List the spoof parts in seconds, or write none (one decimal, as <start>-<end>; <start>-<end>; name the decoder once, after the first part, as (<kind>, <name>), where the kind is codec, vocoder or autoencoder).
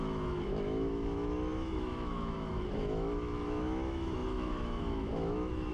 0.0-5.7 (autoencoder, DAC-VAE)